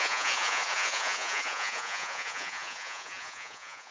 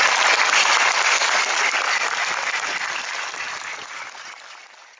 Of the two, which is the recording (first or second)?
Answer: second